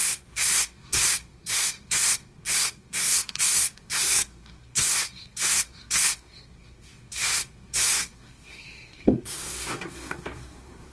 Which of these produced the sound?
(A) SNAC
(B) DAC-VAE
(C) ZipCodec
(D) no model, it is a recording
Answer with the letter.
A